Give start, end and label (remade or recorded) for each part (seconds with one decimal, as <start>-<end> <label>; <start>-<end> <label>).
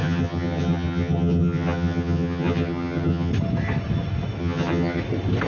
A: 0.0-3.3 remade; 3.3-4.4 recorded; 4.4-5.0 remade; 5.0-5.5 recorded